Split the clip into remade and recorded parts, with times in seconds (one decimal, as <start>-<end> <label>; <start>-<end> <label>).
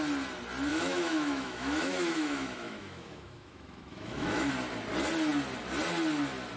0.0-0.7 recorded; 0.7-4.5 remade; 4.5-6.6 recorded